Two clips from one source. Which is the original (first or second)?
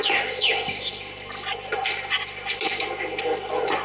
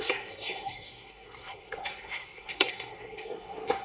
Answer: first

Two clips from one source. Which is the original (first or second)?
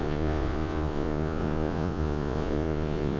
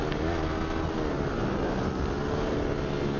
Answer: second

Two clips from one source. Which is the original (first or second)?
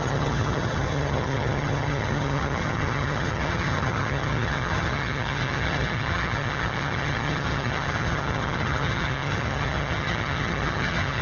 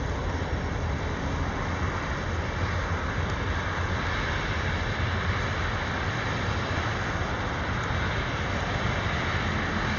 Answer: second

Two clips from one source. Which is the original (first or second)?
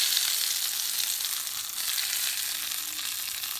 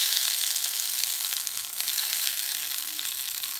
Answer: first